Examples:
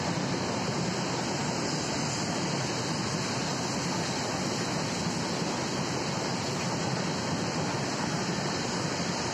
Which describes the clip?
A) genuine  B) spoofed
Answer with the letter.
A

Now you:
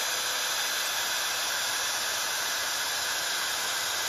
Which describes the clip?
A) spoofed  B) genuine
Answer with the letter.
B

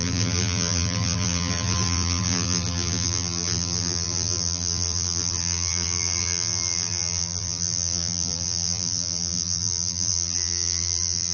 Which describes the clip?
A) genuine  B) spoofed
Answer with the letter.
B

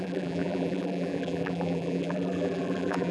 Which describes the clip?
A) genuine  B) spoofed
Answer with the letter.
B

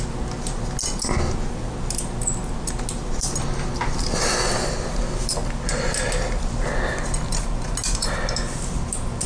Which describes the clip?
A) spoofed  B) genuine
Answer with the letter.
B